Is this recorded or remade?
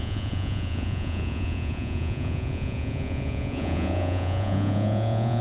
remade